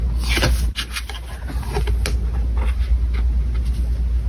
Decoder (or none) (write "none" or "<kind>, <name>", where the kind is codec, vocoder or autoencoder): none